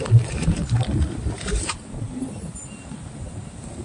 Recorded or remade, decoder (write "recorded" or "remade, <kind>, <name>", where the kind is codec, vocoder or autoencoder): remade, vocoder, BigVGAN v2